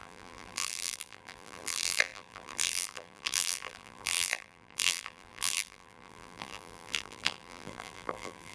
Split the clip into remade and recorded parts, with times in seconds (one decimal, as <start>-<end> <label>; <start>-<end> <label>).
0.0-8.5 remade